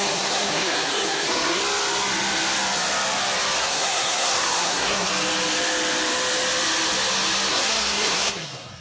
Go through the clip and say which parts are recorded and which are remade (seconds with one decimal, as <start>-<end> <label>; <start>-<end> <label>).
0.0-1.6 remade; 1.6-3.6 recorded; 3.6-5.1 remade; 5.1-7.5 recorded; 7.5-8.8 remade